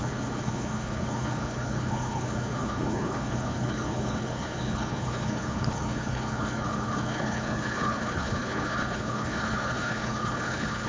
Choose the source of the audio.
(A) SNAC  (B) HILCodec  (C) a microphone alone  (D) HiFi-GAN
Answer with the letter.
B